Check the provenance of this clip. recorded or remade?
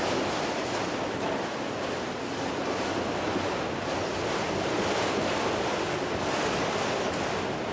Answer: recorded